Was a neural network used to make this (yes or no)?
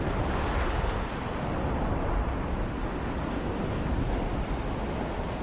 no